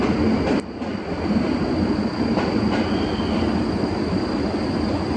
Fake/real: real